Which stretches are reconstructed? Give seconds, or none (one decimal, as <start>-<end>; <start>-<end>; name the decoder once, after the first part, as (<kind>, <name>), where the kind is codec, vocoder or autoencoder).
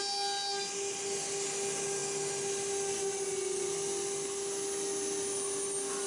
none